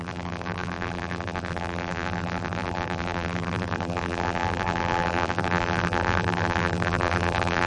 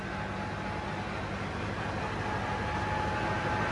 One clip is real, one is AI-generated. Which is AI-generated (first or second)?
first